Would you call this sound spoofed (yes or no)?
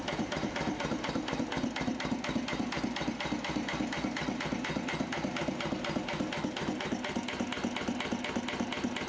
no